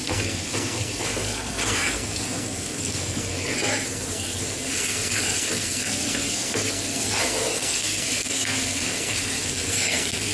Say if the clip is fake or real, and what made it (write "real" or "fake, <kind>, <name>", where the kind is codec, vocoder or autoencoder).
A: fake, codec, SNAC